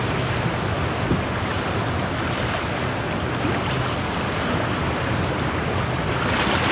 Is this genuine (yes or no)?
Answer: yes